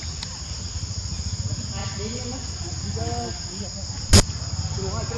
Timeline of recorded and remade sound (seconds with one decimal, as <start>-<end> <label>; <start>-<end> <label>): 0.0-5.2 recorded

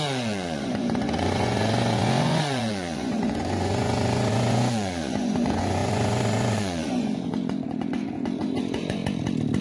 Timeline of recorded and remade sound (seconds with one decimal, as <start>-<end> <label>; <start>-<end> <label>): 0.0-9.0 remade; 9.0-9.6 recorded

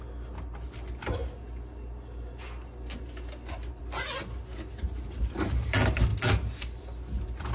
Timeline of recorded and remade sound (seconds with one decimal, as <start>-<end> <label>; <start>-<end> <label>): 0.0-7.5 recorded

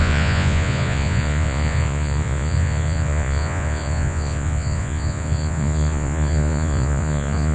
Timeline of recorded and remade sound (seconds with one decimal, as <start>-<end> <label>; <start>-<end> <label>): 0.0-7.5 remade

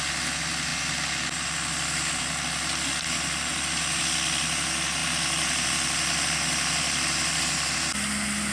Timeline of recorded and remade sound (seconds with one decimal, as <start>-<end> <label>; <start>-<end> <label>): 0.0-8.5 recorded

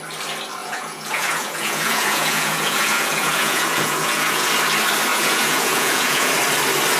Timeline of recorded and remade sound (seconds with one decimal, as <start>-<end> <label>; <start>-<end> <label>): 0.0-0.6 recorded; 0.6-4.5 remade; 4.5-5.1 recorded; 5.1-6.3 remade; 6.3-7.0 recorded